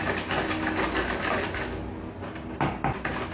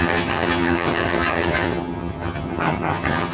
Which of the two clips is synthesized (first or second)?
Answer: second